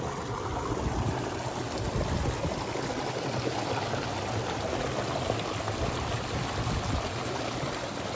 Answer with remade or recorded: recorded